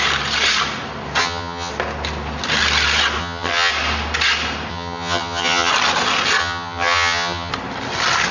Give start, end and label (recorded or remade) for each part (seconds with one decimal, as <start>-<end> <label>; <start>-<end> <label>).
0.0-1.2 recorded; 1.2-1.7 remade; 1.7-3.2 recorded; 3.2-3.7 remade; 3.7-4.7 recorded; 4.7-5.7 remade; 5.7-6.4 recorded; 6.4-7.5 remade; 7.5-8.3 recorded